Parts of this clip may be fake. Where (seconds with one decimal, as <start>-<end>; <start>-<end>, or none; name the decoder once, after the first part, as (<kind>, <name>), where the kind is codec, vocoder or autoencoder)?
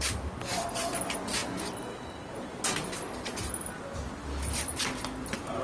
none